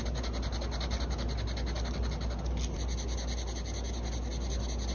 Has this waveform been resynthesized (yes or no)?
no